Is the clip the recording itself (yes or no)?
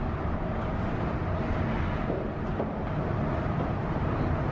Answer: yes